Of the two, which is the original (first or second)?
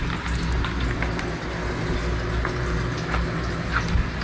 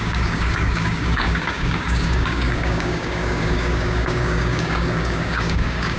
first